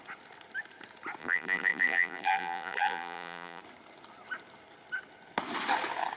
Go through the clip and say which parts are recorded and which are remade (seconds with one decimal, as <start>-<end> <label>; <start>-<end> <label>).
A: 0.0-1.2 recorded; 1.2-3.6 remade; 3.6-6.2 recorded